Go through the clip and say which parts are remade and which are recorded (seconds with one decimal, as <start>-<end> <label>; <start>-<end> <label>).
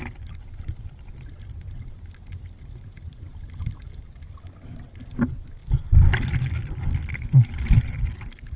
0.0-8.6 recorded